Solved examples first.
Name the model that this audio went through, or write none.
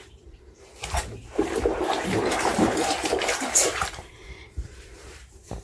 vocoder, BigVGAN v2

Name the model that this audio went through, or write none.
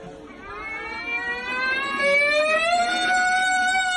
none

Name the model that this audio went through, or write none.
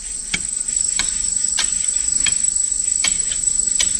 vocoder, BigVGAN v2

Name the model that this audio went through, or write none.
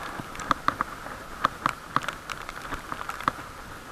none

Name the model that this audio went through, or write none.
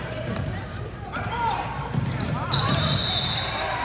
vocoder, BigVGAN v2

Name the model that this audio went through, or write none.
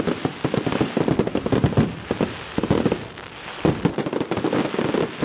none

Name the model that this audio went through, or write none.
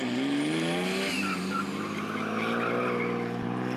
none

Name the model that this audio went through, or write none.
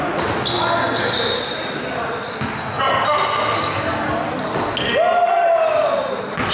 none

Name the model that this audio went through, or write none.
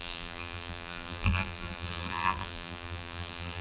vocoder, BigVGAN v2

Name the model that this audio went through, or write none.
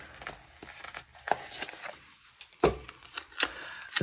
none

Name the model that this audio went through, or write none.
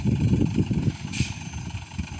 vocoder, BigVGAN v2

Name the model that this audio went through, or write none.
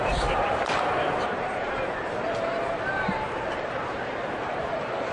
vocoder, BigVGAN v2